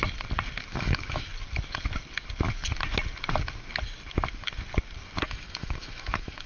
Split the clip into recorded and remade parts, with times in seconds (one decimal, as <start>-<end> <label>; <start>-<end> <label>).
0.0-0.7 recorded; 0.7-1.3 remade; 1.3-5.2 recorded; 5.2-6.5 remade